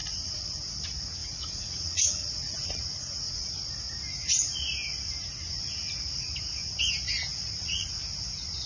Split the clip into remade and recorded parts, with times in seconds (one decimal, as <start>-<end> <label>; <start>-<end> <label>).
0.0-0.6 remade; 0.6-1.2 recorded; 1.2-3.5 remade; 3.5-7.4 recorded; 7.4-8.0 remade; 8.0-8.7 recorded